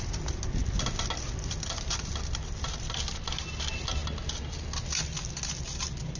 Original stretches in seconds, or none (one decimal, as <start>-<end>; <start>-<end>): 0.0-6.2